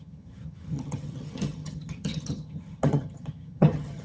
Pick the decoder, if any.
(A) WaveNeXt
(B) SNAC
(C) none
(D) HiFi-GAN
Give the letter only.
D